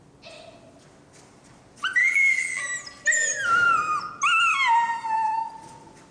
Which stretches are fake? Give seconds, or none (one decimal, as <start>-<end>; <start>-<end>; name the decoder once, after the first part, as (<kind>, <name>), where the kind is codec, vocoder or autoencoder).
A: 2.0-2.6 (vocoder, BigVGAN v2)